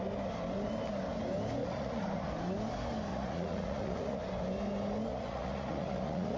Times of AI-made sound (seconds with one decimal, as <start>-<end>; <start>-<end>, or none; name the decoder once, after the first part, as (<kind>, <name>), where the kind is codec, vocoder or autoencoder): 1.6-2.3 (vocoder, Vocos); 3.1-4.2; 5.1-6.4